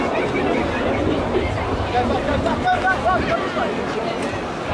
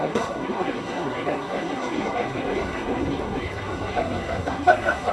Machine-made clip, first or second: second